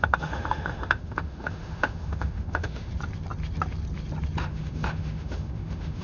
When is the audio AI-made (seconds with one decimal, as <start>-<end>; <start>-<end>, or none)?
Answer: 0.0-2.9; 4.4-6.0